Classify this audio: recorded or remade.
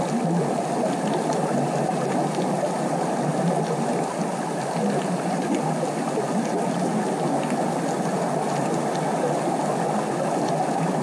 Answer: recorded